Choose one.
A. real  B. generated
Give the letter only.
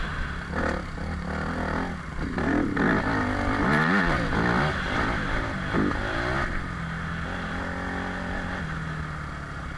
A